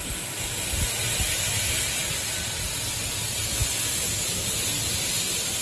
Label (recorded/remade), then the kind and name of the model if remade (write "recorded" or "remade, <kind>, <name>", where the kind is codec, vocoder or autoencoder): recorded